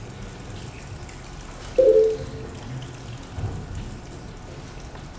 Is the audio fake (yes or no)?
no